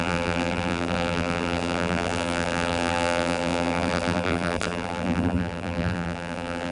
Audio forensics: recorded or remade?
remade